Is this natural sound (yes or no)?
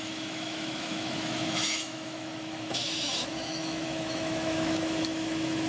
no